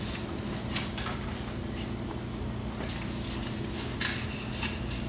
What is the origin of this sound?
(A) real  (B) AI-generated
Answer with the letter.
A